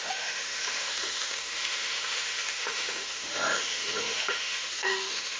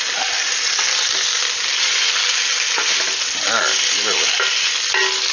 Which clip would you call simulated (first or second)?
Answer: first